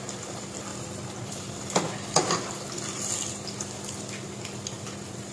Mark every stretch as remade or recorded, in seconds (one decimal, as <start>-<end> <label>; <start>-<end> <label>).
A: 0.0-0.7 recorded; 0.7-2.1 remade; 2.1-5.3 recorded